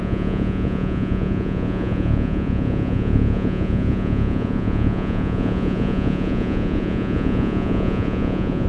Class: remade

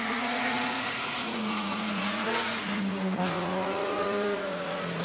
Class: remade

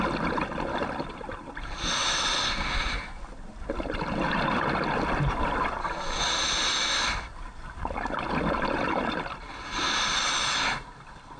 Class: recorded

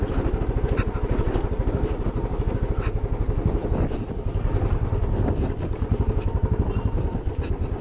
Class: recorded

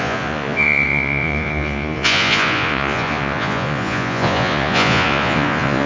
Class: remade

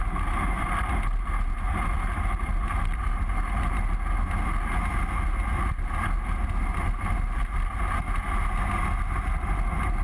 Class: recorded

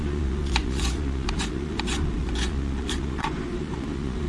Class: remade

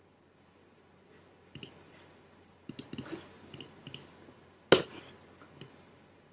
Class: recorded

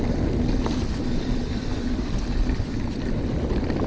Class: recorded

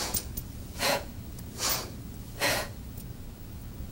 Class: remade